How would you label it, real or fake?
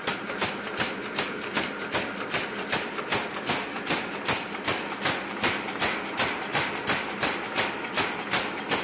real